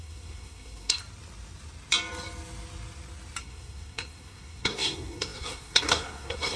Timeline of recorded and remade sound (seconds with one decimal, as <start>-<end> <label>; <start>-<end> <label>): 0.0-1.0 remade; 1.0-3.4 recorded; 3.4-6.6 remade